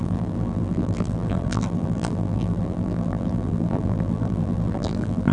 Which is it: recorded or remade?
remade